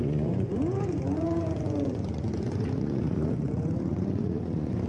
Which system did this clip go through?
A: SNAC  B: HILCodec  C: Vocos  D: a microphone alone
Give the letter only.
C